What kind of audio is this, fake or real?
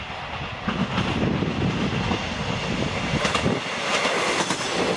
real